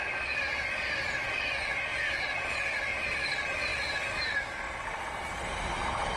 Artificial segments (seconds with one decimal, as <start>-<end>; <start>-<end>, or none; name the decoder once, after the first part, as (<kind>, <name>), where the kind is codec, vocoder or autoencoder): none